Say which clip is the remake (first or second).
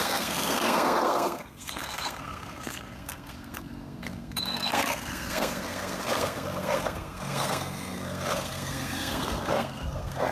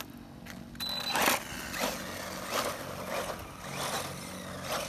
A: first